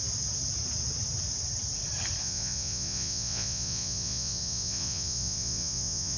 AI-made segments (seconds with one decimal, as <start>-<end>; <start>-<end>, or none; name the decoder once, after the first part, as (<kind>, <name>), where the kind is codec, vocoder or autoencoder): 2.2-6.2 (vocoder, Vocos)